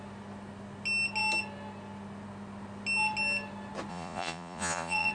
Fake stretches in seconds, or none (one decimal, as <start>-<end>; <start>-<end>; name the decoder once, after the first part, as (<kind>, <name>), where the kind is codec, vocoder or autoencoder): 3.9-5.1 (vocoder, Vocos)